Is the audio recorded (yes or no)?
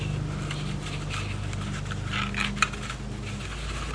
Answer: yes